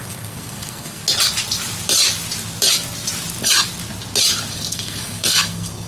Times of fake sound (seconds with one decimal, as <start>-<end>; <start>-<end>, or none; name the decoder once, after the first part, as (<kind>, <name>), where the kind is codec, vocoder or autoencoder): 0.0-1.0 (codec, SNAC); 4.5-5.9